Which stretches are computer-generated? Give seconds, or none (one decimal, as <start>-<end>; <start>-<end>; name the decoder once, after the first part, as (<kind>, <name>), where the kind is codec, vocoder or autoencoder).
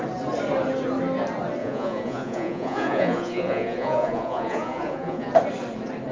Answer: 1.6-5.3 (vocoder, Vocos)